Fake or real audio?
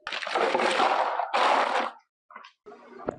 real